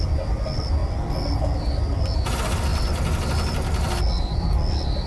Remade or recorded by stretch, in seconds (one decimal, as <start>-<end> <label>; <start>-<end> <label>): 0.0-5.1 recorded